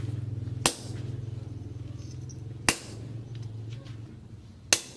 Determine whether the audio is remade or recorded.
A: recorded